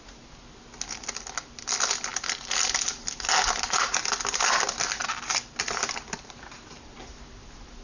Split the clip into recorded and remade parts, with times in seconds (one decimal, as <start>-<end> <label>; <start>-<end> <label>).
0.0-7.8 recorded